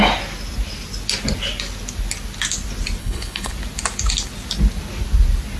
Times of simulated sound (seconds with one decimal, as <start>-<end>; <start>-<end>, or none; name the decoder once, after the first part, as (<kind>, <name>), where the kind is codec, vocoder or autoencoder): 3.0-3.5 (codec, HILCodec)